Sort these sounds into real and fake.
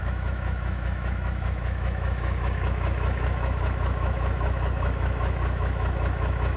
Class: fake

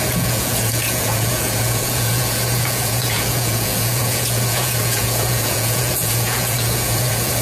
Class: fake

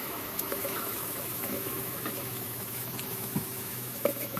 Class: fake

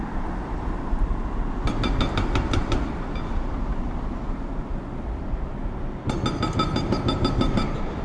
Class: real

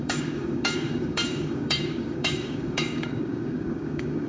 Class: fake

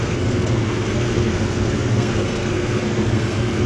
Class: fake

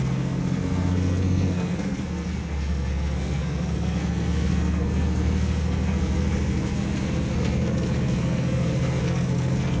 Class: fake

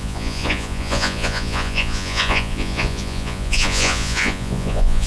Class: fake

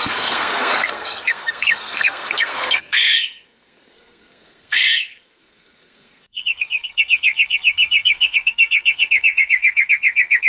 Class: fake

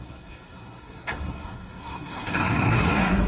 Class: fake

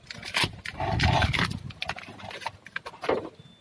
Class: real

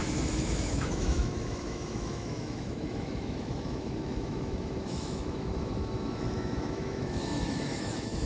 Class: fake